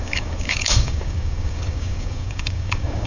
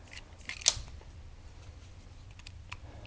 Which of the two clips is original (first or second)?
second